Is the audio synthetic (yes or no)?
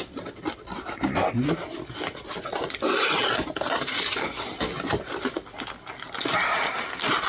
no